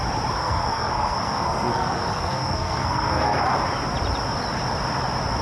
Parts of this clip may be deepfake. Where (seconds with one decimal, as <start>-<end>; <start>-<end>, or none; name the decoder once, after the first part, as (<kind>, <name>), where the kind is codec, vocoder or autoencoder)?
0.4-3.5 (codec, SNAC)